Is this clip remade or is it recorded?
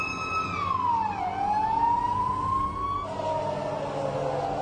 recorded